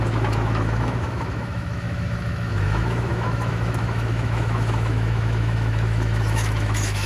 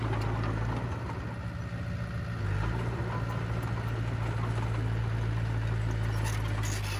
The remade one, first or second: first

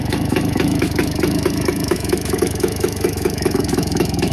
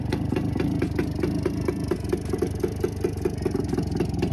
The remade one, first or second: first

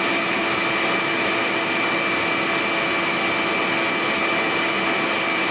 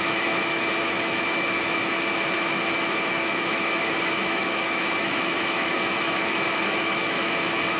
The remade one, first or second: second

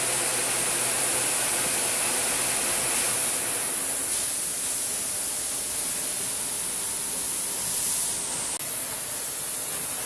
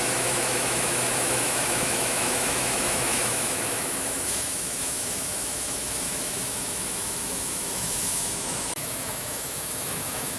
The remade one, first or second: second